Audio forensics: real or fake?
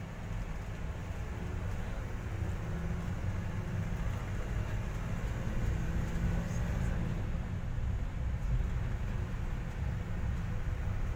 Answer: real